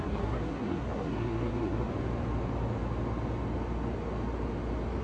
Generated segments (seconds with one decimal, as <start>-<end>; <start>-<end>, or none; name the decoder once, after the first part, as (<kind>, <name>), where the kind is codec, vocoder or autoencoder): 0.0-1.9 (codec, SNAC)